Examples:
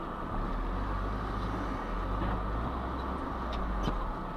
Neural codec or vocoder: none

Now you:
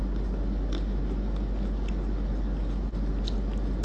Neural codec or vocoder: none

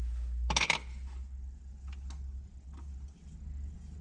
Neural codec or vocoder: none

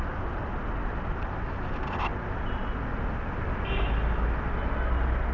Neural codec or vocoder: none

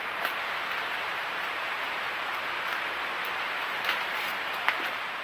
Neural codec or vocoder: vocoder, BigVGAN v2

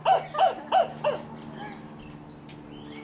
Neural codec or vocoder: none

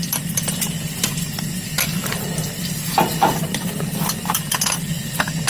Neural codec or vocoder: vocoder, BigVGAN v2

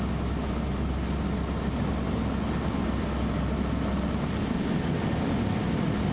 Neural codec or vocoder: none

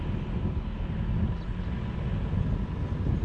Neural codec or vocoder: none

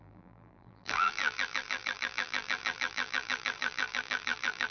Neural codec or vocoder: vocoder, BigVGAN v2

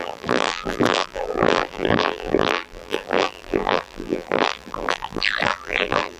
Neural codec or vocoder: vocoder, BigVGAN v2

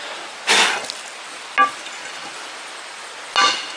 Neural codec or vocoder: none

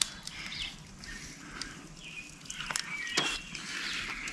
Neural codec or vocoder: none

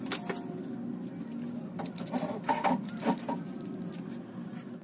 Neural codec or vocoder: none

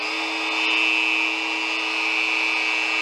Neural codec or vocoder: none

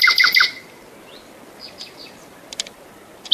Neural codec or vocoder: none